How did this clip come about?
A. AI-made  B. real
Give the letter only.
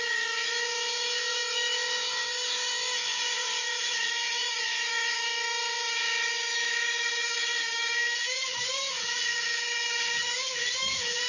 A